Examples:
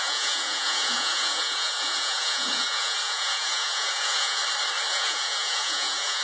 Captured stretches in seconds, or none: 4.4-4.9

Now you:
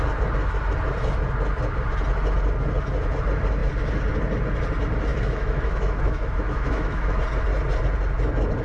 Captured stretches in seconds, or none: 0.0-5.1; 7.2-8.6

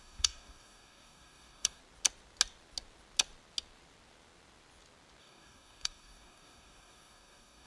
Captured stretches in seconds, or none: 1.8-5.2

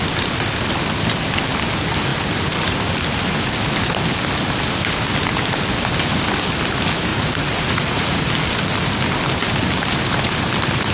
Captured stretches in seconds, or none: 0.0-7.1; 8.2-10.9